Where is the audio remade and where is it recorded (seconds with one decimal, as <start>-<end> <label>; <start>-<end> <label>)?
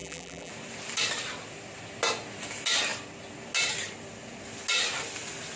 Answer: 0.0-0.5 remade; 0.5-5.6 recorded